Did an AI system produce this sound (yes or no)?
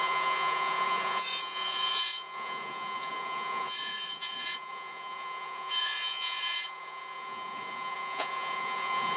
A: yes